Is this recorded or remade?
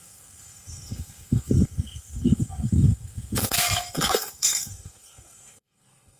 remade